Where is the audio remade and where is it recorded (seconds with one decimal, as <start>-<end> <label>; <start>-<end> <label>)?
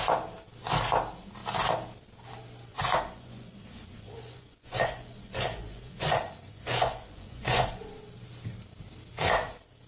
0.0-2.7 recorded; 2.7-7.9 remade; 7.9-9.9 recorded